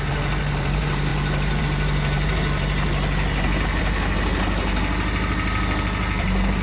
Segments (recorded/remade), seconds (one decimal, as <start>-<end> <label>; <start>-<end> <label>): 0.0-6.6 recorded